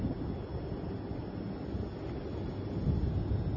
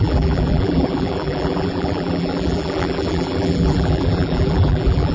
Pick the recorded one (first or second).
first